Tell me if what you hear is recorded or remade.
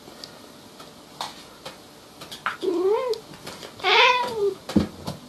recorded